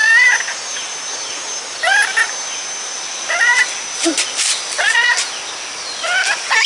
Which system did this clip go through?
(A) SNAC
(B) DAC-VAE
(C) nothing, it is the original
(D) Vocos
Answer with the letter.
C